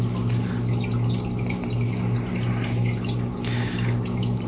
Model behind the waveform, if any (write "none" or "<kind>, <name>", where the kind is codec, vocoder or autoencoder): none